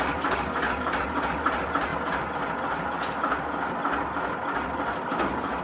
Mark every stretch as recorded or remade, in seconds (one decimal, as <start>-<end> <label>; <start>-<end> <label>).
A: 0.0-5.6 recorded